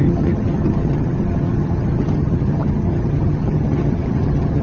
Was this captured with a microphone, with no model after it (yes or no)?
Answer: no